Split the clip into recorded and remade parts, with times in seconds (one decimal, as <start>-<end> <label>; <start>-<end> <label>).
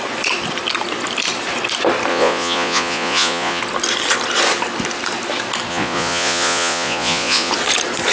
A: 0.0-2.1 recorded; 2.1-3.6 remade; 3.6-5.7 recorded; 5.7-7.5 remade; 7.5-8.1 recorded